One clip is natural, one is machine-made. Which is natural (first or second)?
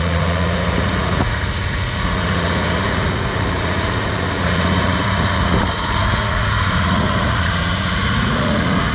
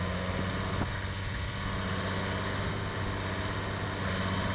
second